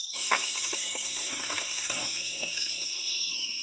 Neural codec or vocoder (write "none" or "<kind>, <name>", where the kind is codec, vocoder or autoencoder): codec, SNAC